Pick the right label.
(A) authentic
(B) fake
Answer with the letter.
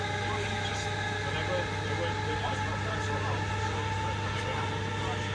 A